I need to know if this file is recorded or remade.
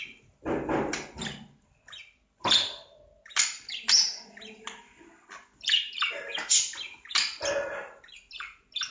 recorded